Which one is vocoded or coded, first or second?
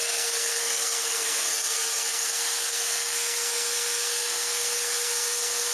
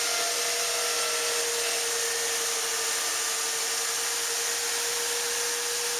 first